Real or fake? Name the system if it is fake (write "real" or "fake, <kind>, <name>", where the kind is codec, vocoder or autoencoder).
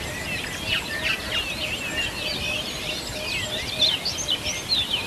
real